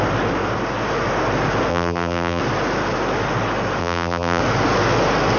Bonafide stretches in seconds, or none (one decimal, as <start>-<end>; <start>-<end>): 0.0-1.7; 2.4-3.8; 4.4-5.4